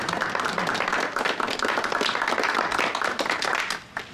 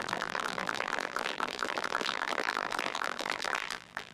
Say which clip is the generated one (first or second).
second